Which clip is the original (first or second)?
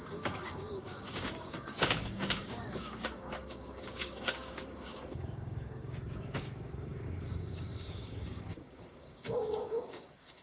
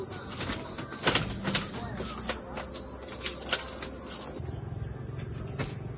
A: second